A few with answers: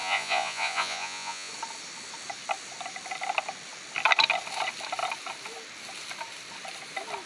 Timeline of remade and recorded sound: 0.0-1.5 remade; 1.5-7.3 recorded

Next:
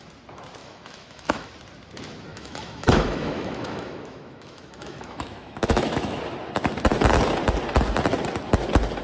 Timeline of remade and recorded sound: 0.0-0.6 recorded; 0.6-1.5 remade; 1.5-2.3 recorded; 2.3-6.2 remade; 6.2-9.0 recorded

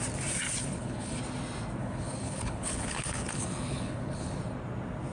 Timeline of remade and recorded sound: 0.0-0.6 recorded; 0.6-1.2 remade; 1.2-1.8 recorded; 1.8-4.4 remade; 4.4-5.1 recorded

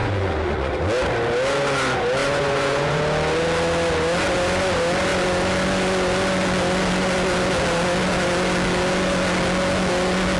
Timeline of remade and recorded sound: 0.0-0.7 remade; 0.7-2.2 recorded; 2.2-3.0 remade; 3.0-10.4 recorded

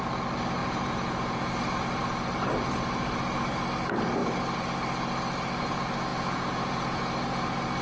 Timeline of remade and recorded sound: 0.0-0.6 recorded; 0.6-1.5 remade; 1.5-6.1 recorded; 6.1-7.0 remade; 7.0-7.8 recorded

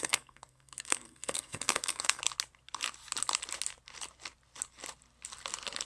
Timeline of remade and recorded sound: 0.0-2.2 remade; 2.2-5.9 recorded